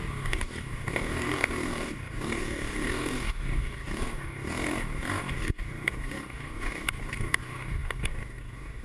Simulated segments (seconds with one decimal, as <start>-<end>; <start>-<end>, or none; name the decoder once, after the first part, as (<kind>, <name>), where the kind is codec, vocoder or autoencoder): 0.0-8.8 (codec, DAC)